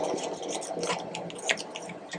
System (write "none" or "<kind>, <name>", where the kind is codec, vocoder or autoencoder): none